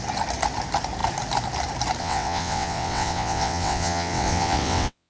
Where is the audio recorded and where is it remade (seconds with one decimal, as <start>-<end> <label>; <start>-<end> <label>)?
0.0-2.0 recorded; 2.0-5.1 remade

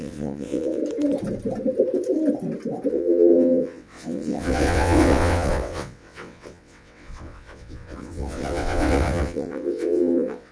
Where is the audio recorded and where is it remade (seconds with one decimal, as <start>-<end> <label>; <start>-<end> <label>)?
0.0-0.8 remade; 0.8-2.9 recorded; 2.9-10.5 remade

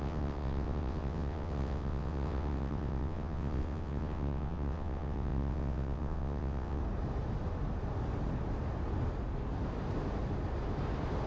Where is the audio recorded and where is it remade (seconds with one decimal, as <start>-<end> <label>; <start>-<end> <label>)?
0.0-6.8 remade; 6.8-11.3 recorded

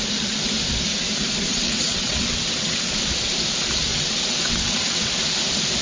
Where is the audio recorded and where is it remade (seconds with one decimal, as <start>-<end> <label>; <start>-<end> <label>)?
0.0-1.5 recorded; 1.5-2.8 remade; 2.8-3.9 recorded; 3.9-5.1 remade; 5.1-5.8 recorded